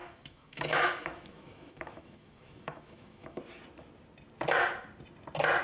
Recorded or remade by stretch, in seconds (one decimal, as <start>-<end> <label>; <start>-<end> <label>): 0.0-3.4 remade; 3.4-5.6 recorded